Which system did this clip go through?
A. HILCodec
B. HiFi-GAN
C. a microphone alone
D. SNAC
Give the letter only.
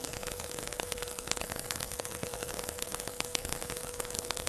D